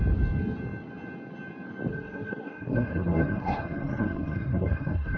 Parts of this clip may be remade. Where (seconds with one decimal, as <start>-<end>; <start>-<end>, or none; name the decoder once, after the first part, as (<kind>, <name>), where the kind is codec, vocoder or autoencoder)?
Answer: 1.9-5.2 (codec, SNAC)